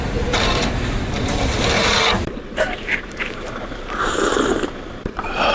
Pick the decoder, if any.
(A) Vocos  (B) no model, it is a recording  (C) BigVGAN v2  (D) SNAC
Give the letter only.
C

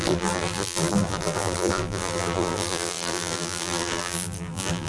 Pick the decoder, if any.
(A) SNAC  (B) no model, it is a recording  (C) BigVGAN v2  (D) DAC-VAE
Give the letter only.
C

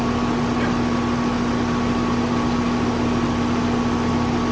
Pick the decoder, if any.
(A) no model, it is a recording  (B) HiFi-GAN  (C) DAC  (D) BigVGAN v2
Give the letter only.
A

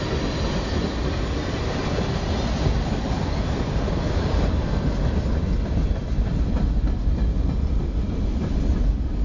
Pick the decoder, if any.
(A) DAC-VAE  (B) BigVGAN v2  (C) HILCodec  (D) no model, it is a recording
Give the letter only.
D